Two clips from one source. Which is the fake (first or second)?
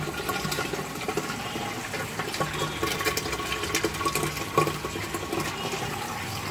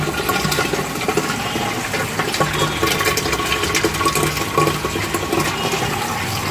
first